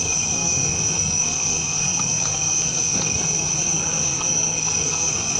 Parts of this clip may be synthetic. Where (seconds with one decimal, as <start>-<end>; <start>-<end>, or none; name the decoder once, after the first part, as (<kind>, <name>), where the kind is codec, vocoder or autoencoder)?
0.0-5.4 (codec, SNAC)